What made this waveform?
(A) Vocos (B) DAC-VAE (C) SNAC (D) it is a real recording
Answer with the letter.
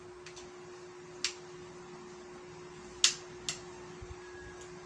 D